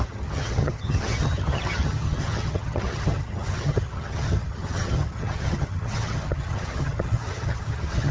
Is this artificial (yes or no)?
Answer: yes